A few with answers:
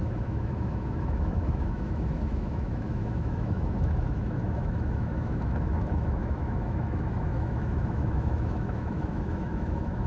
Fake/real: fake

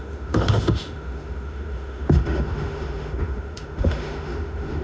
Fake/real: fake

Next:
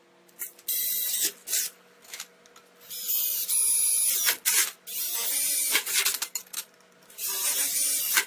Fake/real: real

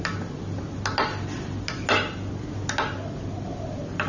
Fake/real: real